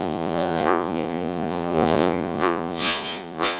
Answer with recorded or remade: remade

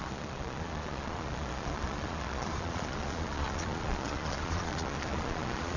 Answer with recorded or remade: remade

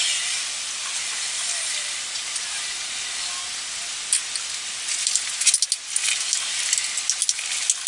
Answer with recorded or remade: recorded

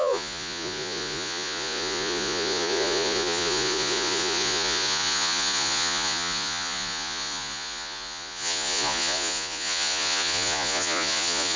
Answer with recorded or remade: remade